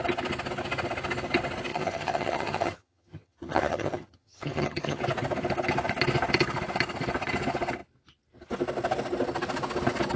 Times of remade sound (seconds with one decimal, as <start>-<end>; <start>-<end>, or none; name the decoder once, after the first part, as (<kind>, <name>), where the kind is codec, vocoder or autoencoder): 1.7-5.0 (vocoder, HiFi-GAN)